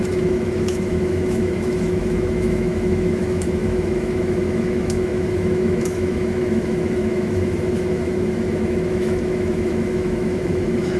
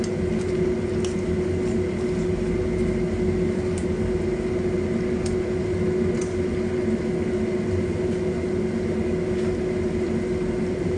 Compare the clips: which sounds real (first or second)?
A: second